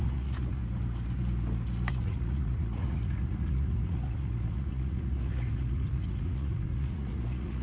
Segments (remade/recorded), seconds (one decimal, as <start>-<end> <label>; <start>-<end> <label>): 0.0-0.6 remade; 0.6-1.9 recorded; 1.9-7.6 remade